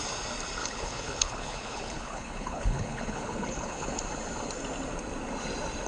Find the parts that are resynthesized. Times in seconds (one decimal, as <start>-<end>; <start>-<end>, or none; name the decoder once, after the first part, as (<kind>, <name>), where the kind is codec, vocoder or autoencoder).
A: 0.6-4.0 (codec, HILCodec)